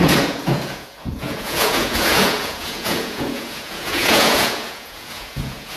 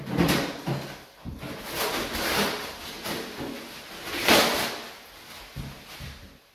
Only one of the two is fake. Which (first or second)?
first